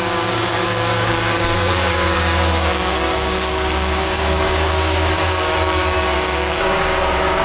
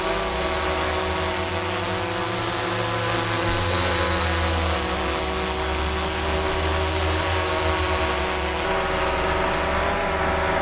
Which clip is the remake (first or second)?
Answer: first